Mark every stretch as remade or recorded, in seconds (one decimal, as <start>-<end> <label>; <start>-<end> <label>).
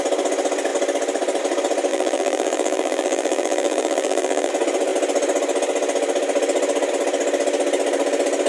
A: 0.0-1.9 recorded; 1.9-4.5 remade; 4.5-8.5 recorded